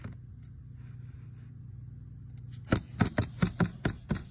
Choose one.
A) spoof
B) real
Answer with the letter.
B